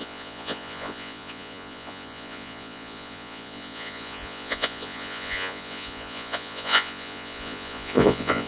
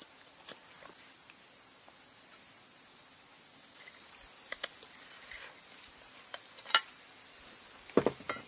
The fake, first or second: first